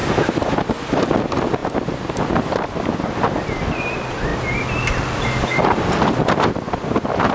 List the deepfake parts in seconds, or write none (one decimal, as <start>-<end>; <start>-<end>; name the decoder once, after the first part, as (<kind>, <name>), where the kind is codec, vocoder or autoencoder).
1.6-2.8 (vocoder, BigVGAN v2)